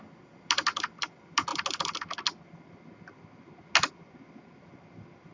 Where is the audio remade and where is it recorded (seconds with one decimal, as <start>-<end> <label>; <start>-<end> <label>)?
0.0-5.3 recorded